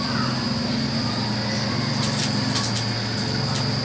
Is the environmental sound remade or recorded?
recorded